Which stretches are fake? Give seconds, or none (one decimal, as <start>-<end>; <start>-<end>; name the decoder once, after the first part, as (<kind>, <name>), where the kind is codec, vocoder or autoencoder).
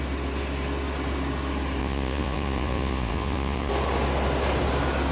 1.8-3.7 (vocoder, Vocos)